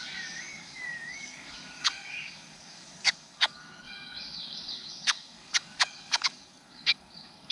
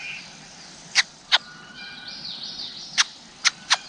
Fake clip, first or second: first